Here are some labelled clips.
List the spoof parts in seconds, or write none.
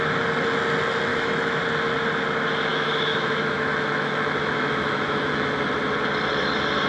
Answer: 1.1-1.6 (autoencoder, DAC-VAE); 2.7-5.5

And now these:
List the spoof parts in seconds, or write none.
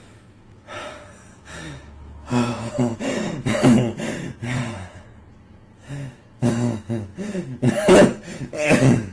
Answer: 0.0-9.1 (autoencoder, DAC-VAE)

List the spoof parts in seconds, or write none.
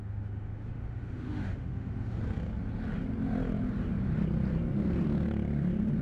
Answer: 0.0-2.2 (autoencoder, DAC-VAE)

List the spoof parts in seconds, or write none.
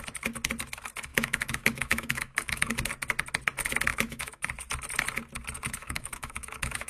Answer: 1.1-2.7 (autoencoder, DAC-VAE); 3.9-4.5; 5.8-6.9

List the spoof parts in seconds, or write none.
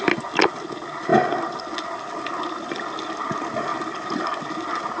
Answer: none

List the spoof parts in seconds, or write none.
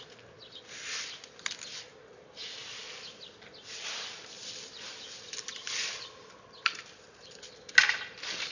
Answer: none